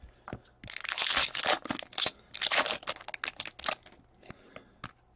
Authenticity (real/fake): real